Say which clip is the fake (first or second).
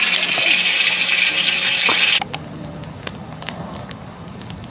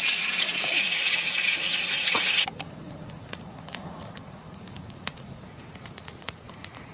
second